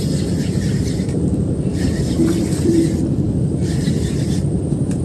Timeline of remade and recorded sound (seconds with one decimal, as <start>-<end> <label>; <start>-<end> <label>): 0.0-1.7 recorded; 1.7-5.0 remade